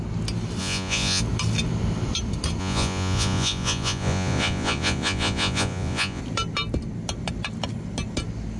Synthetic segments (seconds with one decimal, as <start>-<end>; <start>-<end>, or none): 0.6-1.2; 2.6-6.2

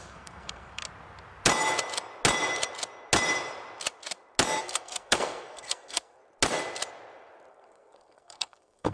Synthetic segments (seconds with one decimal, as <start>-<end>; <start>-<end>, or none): 0.0-0.8; 4.6-6.2; 7.5-8.9

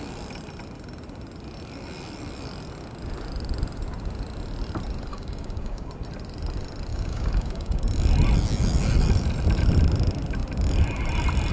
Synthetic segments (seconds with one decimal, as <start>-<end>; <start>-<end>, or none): 5.1-5.9; 6.9-7.8

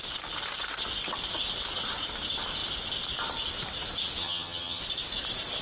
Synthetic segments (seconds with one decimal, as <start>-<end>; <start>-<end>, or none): 4.2-4.8

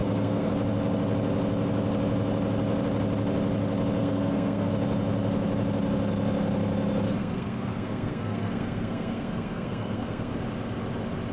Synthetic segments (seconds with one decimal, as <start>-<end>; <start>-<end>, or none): 0.0-0.5; 4.0-4.7; 7.2-10.3

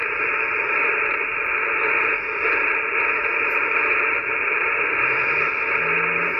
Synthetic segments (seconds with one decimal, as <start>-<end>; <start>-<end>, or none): none